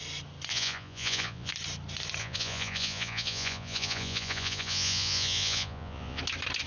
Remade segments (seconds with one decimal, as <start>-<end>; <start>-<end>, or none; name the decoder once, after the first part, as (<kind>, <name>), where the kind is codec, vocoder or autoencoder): 0.5-1.5 (vocoder, Vocos); 2.2-6.2